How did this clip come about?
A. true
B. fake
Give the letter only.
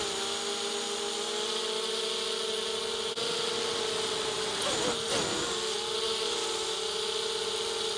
A